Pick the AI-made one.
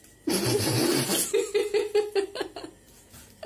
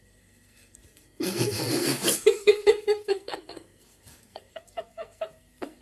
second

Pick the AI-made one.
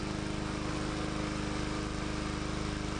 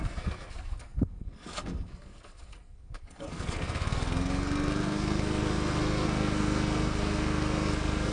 second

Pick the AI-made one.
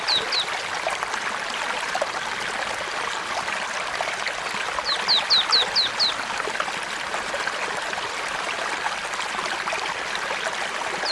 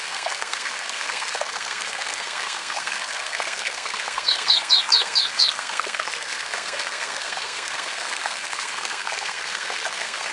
second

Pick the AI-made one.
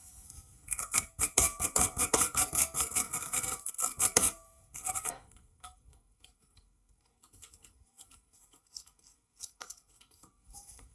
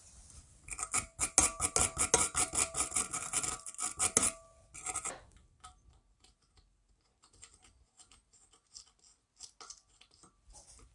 first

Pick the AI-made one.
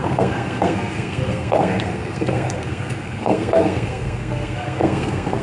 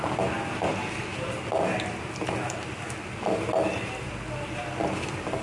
first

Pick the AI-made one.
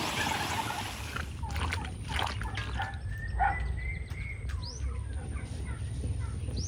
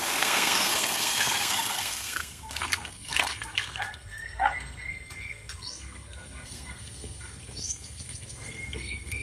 second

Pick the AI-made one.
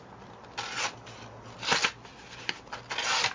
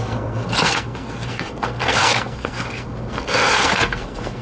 second